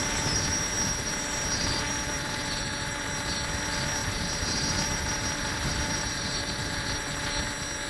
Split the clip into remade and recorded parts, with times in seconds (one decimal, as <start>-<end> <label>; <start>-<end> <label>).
0.0-3.1 remade; 3.1-4.0 recorded; 4.0-7.3 remade; 7.3-7.9 recorded